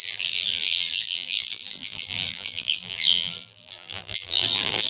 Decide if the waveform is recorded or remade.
remade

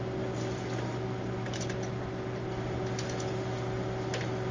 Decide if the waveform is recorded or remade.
recorded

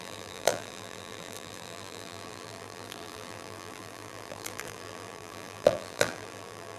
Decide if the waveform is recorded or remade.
remade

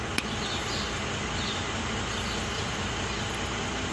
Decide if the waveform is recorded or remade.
recorded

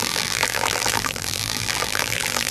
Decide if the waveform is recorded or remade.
remade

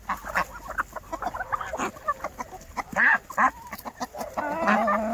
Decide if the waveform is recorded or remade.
recorded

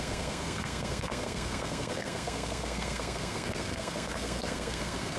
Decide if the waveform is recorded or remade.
remade